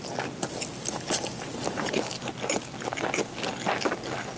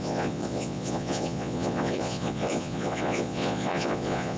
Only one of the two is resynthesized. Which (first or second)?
second